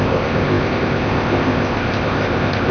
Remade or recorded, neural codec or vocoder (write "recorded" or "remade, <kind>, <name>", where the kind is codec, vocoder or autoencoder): remade, codec, ZipCodec